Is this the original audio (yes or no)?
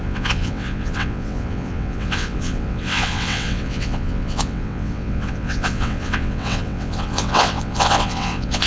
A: no